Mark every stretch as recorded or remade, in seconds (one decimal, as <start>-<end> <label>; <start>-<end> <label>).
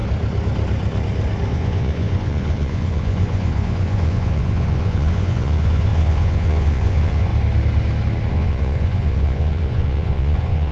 0.0-1.5 recorded; 1.5-7.3 remade; 7.3-8.3 recorded; 8.3-10.7 remade